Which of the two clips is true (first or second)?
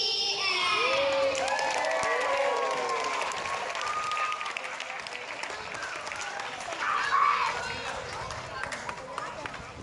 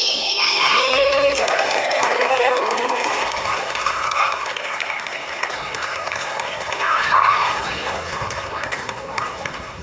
first